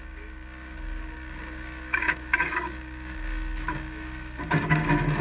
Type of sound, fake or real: fake